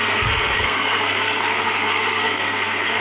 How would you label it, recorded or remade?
remade